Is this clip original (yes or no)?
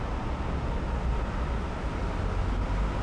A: yes